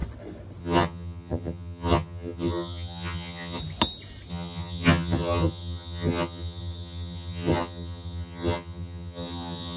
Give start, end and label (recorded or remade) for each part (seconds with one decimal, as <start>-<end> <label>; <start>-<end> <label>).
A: 0.0-0.6 recorded; 0.6-3.6 remade; 3.6-4.3 recorded; 4.3-9.8 remade